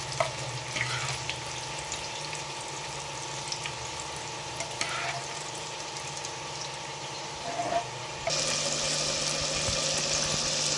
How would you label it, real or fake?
real